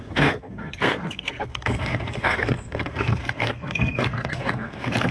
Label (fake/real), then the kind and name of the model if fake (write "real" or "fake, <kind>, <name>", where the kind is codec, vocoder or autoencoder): fake, codec, SNAC